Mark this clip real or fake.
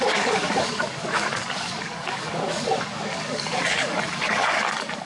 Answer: fake